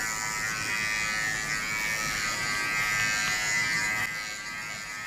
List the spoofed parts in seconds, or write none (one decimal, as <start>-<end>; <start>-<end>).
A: none